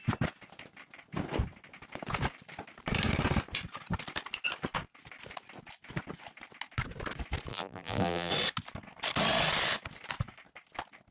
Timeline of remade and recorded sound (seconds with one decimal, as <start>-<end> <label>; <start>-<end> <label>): 0.0-7.5 recorded; 7.5-8.3 remade; 8.3-11.1 recorded